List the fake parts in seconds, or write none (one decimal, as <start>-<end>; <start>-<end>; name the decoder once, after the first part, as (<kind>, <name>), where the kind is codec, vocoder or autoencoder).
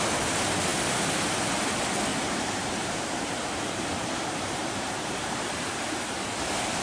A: 0.7-1.6 (vocoder, BigVGAN v2); 2.1-3.7; 4.6-5.7